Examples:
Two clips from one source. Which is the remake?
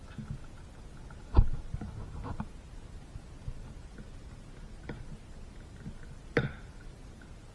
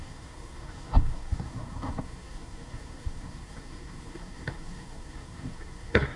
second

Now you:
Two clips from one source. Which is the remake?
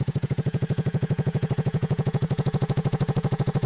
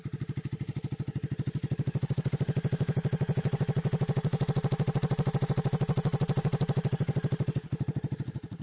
first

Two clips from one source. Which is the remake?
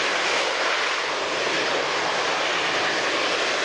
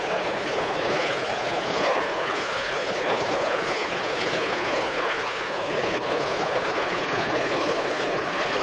second